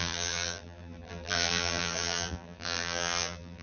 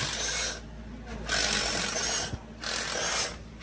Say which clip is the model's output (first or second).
first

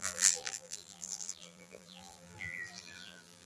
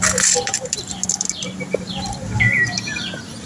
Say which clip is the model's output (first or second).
first